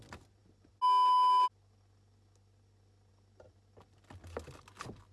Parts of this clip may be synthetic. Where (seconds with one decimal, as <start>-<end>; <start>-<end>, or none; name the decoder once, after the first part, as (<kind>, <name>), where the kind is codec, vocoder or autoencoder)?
none